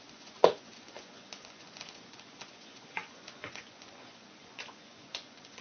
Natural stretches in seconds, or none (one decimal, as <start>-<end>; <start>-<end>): none

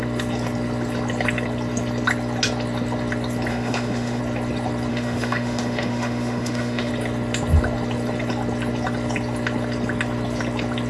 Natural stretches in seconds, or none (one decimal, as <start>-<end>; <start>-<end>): 0.0-3.5; 4.2-4.9; 6.9-10.9

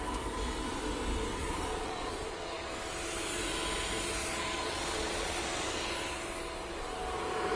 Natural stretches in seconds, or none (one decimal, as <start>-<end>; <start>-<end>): 0.0-1.4; 2.7-4.2; 5.4-7.6

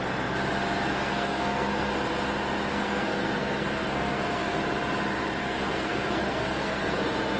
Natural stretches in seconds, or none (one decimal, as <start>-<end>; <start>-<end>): 0.0-0.9; 1.9-2.7; 4.6-5.4; 7.0-7.4